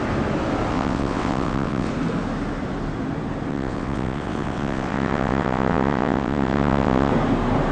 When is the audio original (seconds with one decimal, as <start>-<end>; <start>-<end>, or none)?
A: 0.0-0.7; 1.9-3.5; 7.1-7.7